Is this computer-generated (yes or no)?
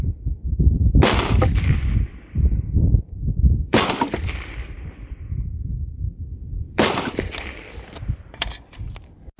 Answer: yes